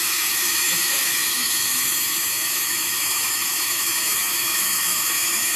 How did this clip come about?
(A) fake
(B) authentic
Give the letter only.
A